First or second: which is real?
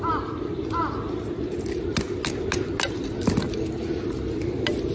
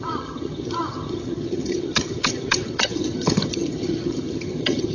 first